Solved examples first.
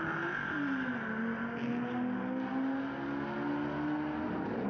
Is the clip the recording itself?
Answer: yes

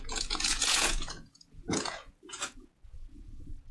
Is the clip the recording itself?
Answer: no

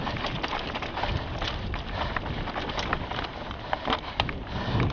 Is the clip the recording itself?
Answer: yes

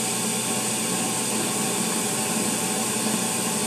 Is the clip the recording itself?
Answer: yes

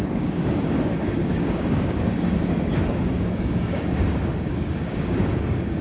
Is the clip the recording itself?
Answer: no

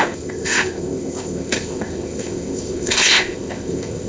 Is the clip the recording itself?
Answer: no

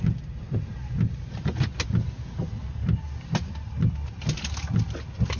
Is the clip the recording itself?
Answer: yes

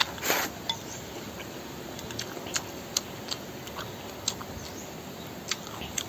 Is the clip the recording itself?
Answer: yes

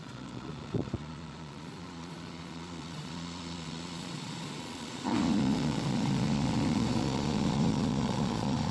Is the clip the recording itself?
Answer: no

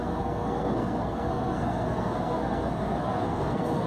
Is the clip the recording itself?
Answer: no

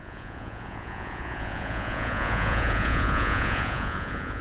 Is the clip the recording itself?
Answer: no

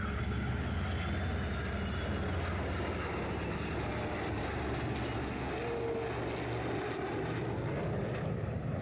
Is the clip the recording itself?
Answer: yes